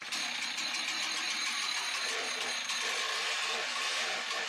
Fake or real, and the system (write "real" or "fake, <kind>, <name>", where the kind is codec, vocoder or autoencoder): real